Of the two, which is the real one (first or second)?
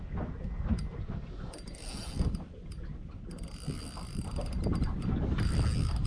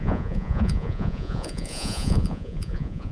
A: first